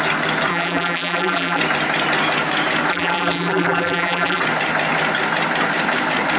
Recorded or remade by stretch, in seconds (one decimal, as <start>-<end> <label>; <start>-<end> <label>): 0.0-0.5 recorded; 0.5-1.6 remade; 1.6-2.9 recorded; 2.9-4.4 remade; 4.4-6.4 recorded